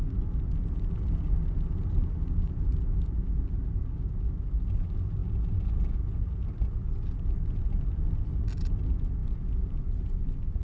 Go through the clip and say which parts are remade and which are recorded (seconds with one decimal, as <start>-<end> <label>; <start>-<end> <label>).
0.0-10.6 recorded